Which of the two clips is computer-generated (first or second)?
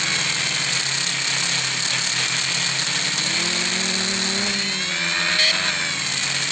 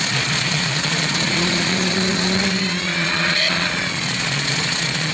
second